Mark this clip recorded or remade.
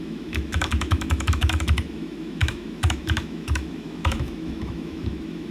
remade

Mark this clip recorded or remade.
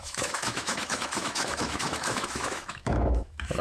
remade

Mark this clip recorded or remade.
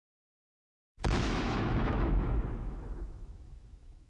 remade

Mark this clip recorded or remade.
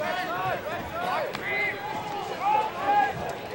recorded